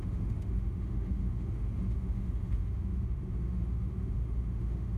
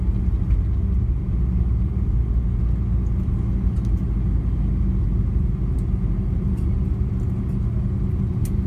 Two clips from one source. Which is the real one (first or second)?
second